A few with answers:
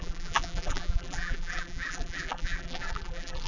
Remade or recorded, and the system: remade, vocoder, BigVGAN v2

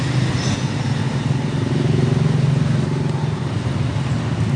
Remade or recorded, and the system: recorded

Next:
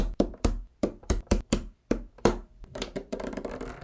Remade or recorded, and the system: remade, vocoder, BigVGAN v2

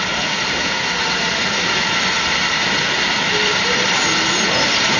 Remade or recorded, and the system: remade, vocoder, BigVGAN v2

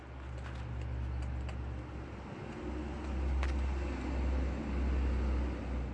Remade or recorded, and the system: recorded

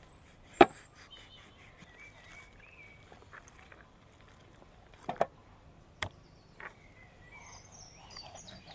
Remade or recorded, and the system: remade, vocoder, BigVGAN v2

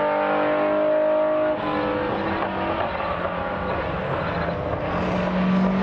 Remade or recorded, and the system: recorded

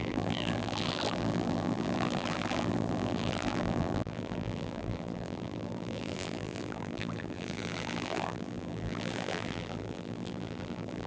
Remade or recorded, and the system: remade, vocoder, BigVGAN v2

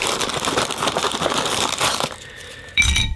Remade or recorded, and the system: remade, vocoder, BigVGAN v2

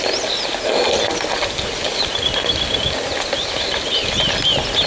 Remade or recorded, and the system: recorded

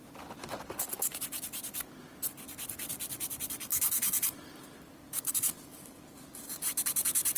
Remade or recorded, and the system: remade, vocoder, BigVGAN v2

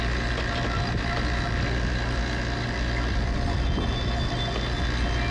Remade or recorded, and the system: recorded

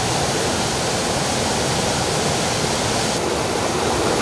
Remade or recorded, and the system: remade, vocoder, BigVGAN v2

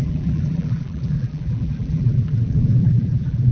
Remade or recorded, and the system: remade, vocoder, BigVGAN v2